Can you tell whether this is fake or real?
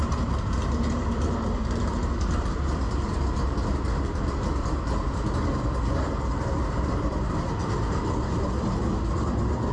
fake